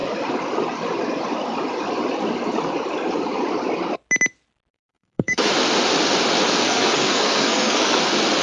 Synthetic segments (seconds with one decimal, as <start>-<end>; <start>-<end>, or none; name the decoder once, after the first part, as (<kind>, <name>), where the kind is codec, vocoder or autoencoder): 4.7-5.5 (codec, SNAC); 6.6-8.0